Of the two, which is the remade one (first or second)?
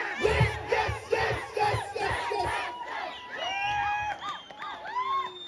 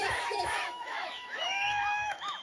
second